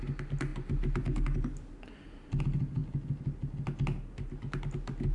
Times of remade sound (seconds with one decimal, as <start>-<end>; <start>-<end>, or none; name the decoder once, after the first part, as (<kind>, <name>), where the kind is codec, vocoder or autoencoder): none